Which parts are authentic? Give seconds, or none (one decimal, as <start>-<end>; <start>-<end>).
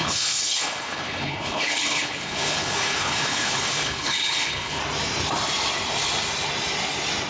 4.8-7.3